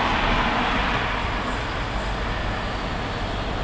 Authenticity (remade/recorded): recorded